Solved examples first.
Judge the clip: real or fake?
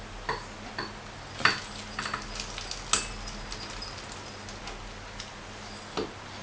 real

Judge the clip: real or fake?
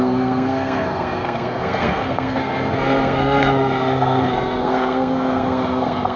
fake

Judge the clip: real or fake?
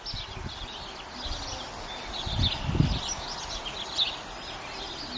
real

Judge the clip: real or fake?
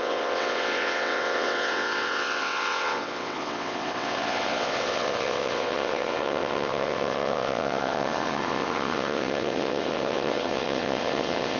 fake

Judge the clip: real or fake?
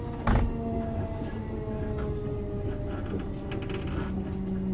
real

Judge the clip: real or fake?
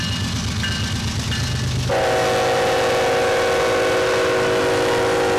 real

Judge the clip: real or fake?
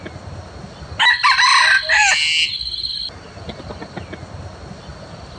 real